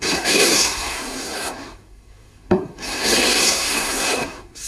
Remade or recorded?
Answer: remade